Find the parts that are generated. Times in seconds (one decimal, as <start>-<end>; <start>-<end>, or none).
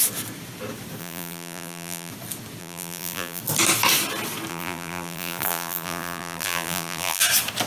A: 1.0-2.1; 2.6-3.4; 4.5-7.2